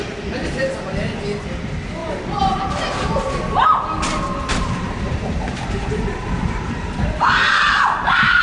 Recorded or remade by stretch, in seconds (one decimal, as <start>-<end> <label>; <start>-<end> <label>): 0.0-2.0 recorded; 2.0-2.8 remade; 2.8-4.3 recorded; 4.3-8.4 remade